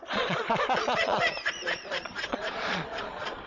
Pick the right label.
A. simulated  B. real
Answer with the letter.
A